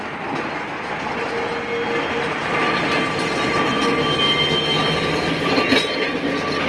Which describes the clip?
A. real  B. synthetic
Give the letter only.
A